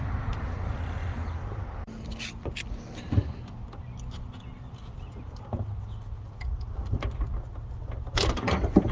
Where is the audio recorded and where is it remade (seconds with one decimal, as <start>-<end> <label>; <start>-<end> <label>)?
0.0-8.9 recorded